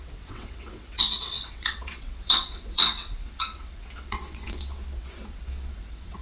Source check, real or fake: fake